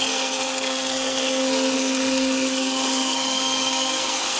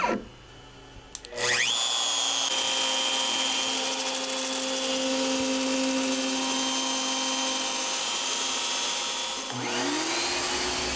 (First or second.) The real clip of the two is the second